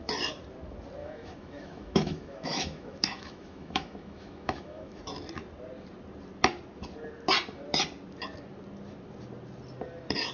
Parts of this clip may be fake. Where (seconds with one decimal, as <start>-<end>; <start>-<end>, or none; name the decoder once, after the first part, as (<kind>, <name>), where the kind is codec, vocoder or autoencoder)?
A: 1.0-5.0 (autoencoder, DAC-VAE)